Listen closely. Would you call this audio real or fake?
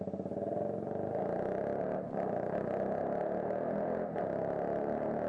real